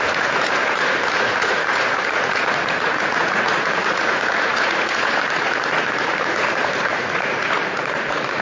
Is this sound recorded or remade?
remade